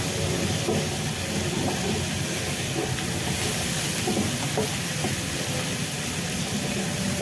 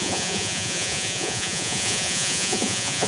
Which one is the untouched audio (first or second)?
first